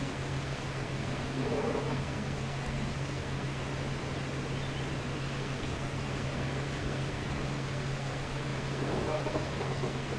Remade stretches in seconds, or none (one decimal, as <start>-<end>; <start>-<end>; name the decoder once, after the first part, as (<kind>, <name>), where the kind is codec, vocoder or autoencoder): 0.0-3.7 (codec, SNAC); 5.2-10.2

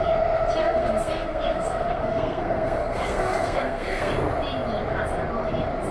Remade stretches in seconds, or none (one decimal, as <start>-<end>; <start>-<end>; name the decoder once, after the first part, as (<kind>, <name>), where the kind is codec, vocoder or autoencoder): 0.6-4.1 (codec, SNAC)

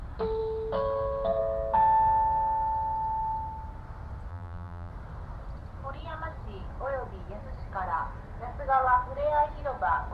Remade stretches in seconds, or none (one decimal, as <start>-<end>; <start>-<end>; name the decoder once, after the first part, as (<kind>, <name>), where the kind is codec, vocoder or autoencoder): 4.3-4.9 (vocoder, BigVGAN v2)

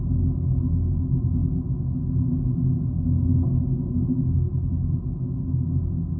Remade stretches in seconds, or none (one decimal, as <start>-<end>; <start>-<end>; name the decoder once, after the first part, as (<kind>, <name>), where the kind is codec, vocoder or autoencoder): none